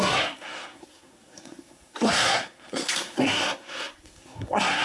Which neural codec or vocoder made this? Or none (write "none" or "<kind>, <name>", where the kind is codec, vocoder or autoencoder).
codec, SNAC